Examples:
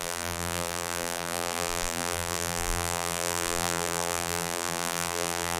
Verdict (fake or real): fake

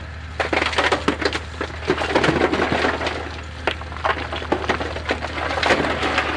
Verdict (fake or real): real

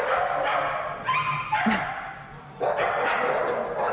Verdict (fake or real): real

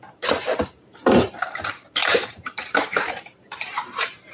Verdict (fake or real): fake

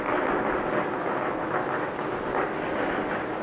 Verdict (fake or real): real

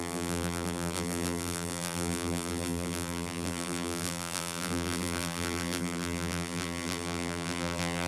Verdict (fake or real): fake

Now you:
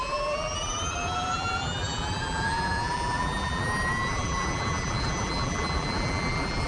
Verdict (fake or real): fake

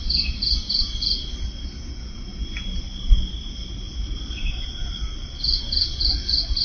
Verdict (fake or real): fake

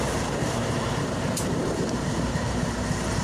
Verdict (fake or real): fake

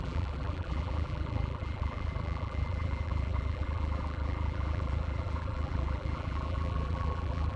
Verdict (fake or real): fake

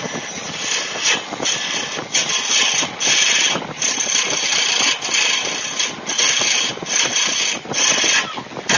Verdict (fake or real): real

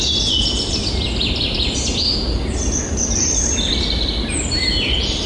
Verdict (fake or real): real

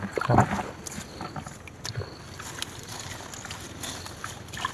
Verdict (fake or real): real